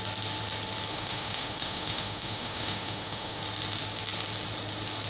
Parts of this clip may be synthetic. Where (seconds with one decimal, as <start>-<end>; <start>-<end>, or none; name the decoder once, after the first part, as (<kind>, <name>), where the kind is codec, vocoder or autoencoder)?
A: 0.9-3.4 (autoencoder, DAC-VAE)